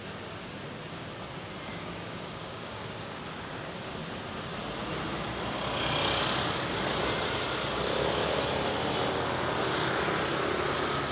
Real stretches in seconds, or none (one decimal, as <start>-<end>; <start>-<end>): 0.0-1.7; 3.2-11.1

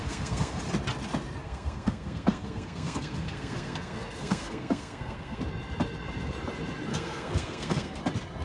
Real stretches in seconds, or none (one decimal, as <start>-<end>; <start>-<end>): 0.6-1.4; 5.4-6.9; 8.0-8.4

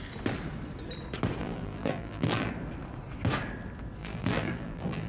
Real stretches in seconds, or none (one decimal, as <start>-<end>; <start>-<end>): 0.0-1.4; 2.5-4.0

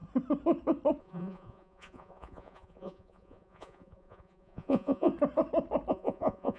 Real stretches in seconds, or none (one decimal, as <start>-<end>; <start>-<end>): 0.0-1.0; 5.1-5.9

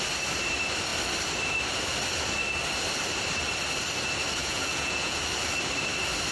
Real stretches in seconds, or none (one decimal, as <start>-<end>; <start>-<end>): 0.0-4.4; 5.2-6.3